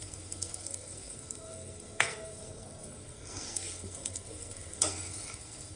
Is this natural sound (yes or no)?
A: no